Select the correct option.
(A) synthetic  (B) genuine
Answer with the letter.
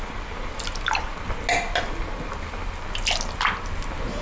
B